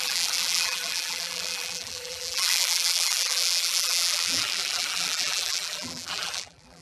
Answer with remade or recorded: remade